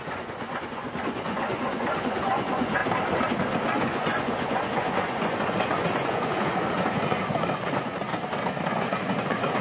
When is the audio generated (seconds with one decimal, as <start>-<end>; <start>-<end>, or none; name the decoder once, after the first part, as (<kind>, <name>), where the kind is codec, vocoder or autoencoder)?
0.0-2.8 (vocoder, Vocos); 3.8-8.1; 8.7-9.6